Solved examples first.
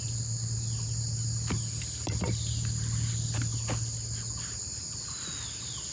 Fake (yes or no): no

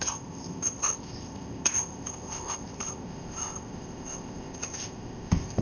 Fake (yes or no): yes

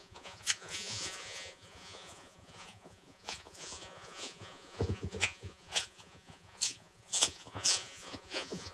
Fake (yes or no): yes